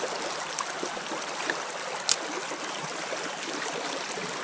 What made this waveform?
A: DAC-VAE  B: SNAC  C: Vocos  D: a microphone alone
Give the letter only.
D